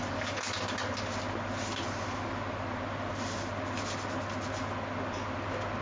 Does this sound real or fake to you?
real